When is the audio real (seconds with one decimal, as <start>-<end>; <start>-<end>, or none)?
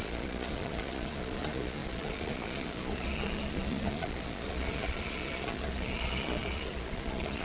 none